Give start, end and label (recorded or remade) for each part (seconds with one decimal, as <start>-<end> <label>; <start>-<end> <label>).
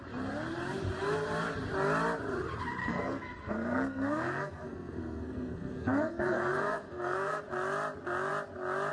0.0-2.8 recorded; 2.8-7.4 remade; 7.4-8.9 recorded